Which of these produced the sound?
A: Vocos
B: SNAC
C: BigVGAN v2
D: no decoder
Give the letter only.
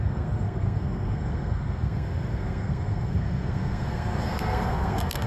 B